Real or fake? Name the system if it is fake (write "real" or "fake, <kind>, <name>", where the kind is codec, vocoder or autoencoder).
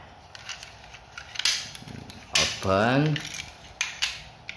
real